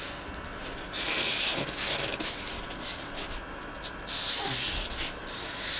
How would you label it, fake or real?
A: real